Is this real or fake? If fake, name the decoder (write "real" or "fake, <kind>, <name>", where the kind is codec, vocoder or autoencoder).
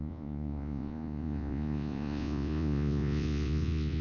fake, vocoder, Vocos